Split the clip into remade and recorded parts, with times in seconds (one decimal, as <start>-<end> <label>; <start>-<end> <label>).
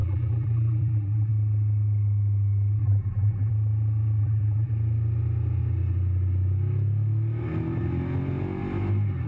0.0-1.3 remade; 1.3-2.8 recorded; 2.8-3.5 remade; 3.5-4.2 recorded; 4.2-4.7 remade; 4.7-9.3 recorded